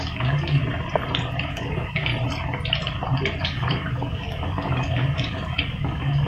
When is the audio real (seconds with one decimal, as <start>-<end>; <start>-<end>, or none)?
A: 0.6-1.5; 2.1-3.4